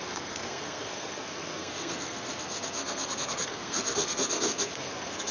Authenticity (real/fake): fake